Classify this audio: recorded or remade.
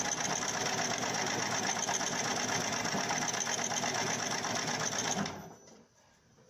recorded